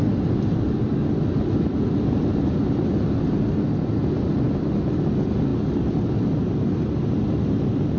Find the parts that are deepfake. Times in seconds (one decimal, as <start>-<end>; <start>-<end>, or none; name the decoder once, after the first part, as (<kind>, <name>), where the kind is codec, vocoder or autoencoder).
none